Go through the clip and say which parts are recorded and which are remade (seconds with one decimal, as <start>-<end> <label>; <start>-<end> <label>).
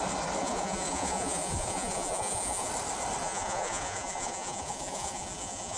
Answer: 0.0-0.4 recorded; 0.4-2.7 remade; 2.7-3.2 recorded; 3.2-5.8 remade